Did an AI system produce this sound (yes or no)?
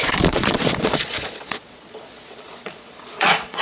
yes